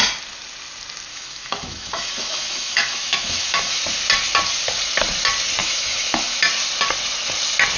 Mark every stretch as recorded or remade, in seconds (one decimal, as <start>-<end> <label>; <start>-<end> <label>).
0.0-1.1 recorded; 1.1-3.8 remade; 3.8-5.6 recorded; 5.6-6.4 remade; 6.4-7.8 recorded